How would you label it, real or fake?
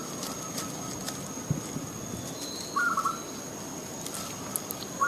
real